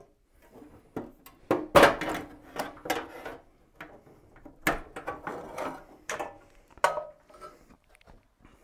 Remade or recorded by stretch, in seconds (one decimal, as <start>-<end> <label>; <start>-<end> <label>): 0.0-8.6 recorded